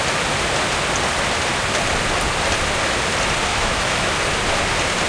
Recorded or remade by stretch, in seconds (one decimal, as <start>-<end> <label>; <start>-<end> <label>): 0.0-3.5 recorded; 3.5-4.1 remade; 4.1-5.1 recorded